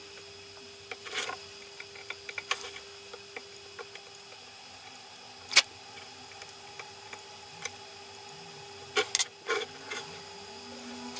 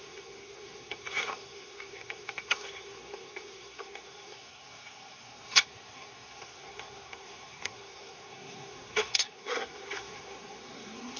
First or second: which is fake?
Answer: second